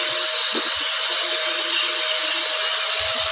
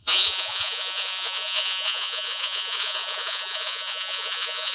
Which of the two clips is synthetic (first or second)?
second